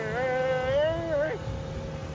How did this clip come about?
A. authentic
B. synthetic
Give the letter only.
A